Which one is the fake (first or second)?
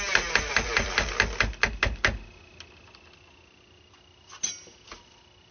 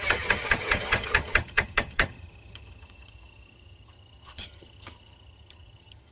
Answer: second